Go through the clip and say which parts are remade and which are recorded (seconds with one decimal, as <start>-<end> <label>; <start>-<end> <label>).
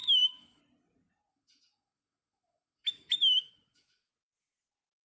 0.0-0.6 remade; 0.6-1.3 recorded; 1.3-4.1 remade; 4.1-5.0 recorded